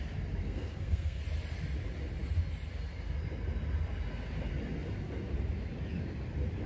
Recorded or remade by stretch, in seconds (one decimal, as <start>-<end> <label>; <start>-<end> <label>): 0.0-0.4 recorded; 0.4-1.2 remade; 1.2-6.7 recorded